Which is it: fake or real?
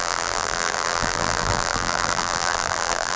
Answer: fake